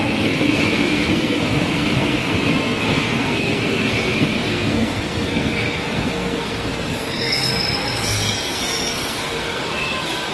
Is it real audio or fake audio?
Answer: fake